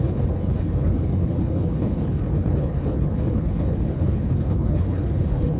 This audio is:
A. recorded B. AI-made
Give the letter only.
B